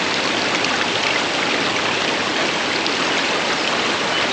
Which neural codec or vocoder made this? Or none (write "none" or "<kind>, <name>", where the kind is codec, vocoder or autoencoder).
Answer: none